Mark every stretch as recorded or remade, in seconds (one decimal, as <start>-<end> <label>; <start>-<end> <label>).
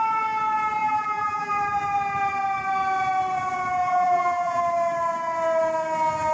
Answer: 0.0-0.8 recorded; 0.8-1.5 remade; 1.5-3.8 recorded; 3.8-4.6 remade; 4.6-6.3 recorded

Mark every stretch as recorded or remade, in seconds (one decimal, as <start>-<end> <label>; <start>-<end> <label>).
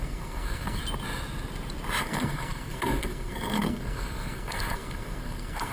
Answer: 0.0-0.8 remade; 0.8-2.0 recorded; 2.0-5.7 remade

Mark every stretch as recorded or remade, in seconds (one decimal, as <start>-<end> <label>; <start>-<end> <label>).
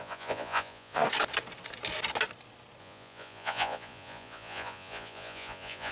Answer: 0.0-1.0 remade; 1.0-2.8 recorded; 2.8-5.9 remade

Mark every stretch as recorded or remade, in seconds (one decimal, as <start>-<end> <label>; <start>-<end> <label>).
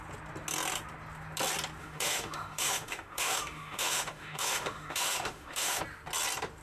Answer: 0.0-1.8 recorded; 1.8-5.8 remade; 5.8-6.6 recorded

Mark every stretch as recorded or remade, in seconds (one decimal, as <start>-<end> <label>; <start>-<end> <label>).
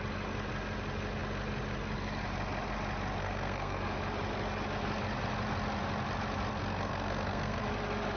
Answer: 0.0-3.2 recorded; 3.2-3.8 remade; 3.8-6.6 recorded; 6.6-7.6 remade; 7.6-8.2 recorded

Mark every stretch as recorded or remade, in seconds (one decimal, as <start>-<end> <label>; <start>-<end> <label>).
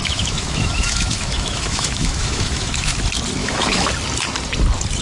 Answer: 0.0-3.0 remade; 3.0-3.4 recorded; 3.4-3.9 remade; 3.9-5.0 recorded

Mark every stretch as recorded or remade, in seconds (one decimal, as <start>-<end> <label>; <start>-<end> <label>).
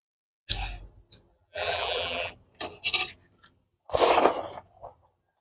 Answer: 0.0-1.3 recorded; 1.3-2.3 remade; 2.3-5.4 recorded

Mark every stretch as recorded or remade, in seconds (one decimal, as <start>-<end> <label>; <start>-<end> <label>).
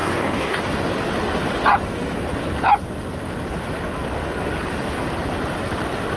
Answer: 0.0-0.6 remade; 0.6-6.2 recorded